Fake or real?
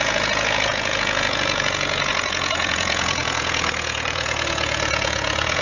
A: fake